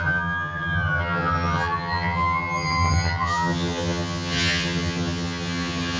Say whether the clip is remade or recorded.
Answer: remade